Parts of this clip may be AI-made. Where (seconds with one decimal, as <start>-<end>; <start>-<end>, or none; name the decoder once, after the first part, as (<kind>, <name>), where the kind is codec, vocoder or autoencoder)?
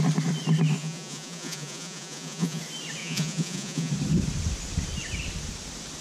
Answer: 0.8-2.6 (vocoder, Vocos); 3.0-3.9